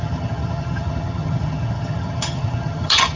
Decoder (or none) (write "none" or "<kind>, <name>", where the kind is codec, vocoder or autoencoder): vocoder, HiFi-GAN